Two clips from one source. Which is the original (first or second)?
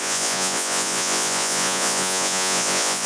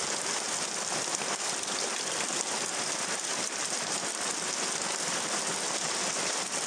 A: second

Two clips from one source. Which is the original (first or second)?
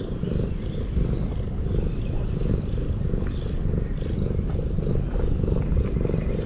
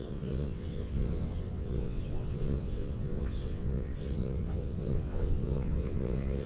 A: first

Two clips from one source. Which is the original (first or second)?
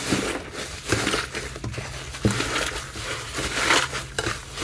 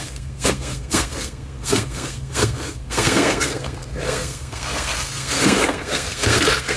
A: first